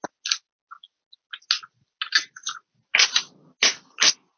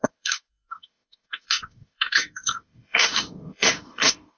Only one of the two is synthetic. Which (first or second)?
second